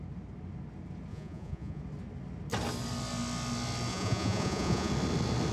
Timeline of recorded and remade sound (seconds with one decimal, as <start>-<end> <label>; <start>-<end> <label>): 0.0-1.1 recorded; 1.1-1.8 remade; 1.8-3.9 recorded; 3.9-4.9 remade; 4.9-5.5 recorded